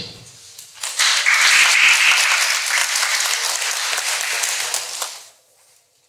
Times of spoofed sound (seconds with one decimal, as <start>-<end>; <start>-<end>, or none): none